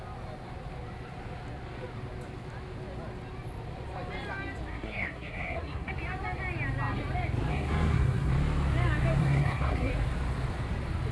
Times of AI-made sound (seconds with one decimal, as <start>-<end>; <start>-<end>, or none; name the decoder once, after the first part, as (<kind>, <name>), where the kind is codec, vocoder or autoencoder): 4.7-5.9 (codec, SNAC); 7.5-8.3; 9.2-9.9